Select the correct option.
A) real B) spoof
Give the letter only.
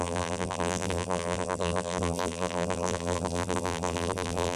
B